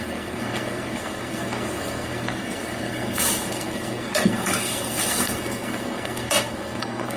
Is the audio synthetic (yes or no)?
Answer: yes